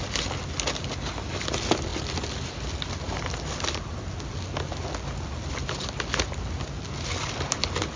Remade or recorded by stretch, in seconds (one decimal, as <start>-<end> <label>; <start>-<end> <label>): 0.0-8.0 recorded